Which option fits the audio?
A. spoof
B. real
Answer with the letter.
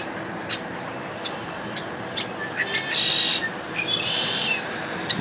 B